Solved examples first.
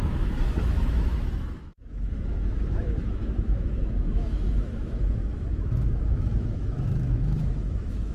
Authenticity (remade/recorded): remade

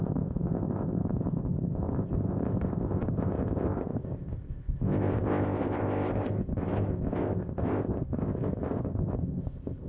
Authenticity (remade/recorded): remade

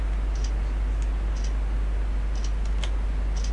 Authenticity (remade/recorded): recorded